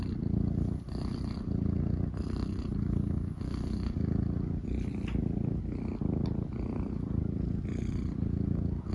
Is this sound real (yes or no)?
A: yes